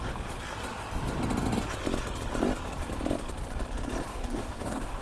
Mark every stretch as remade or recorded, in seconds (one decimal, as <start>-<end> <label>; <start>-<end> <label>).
0.0-4.1 recorded; 4.1-5.0 remade